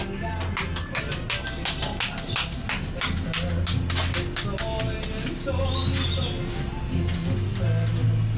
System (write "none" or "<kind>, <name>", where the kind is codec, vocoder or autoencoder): none